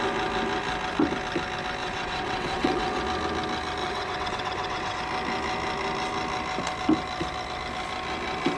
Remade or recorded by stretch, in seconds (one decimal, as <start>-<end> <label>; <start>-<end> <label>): 0.0-1.8 recorded; 1.8-3.0 remade; 3.0-3.8 recorded; 3.8-5.0 remade; 5.0-8.6 recorded